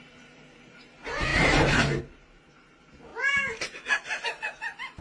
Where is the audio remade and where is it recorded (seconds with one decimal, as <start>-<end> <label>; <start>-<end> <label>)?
0.0-3.1 remade; 3.1-4.2 recorded; 4.2-5.0 remade